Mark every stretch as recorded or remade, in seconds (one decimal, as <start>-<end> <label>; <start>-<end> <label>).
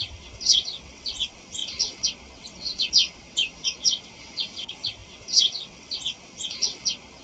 0.0-7.2 remade